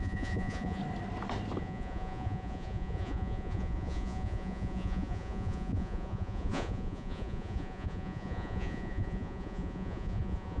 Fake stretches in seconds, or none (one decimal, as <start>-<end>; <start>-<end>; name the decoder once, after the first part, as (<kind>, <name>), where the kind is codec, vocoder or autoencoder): 0.0-0.8 (vocoder, Vocos); 1.6-10.6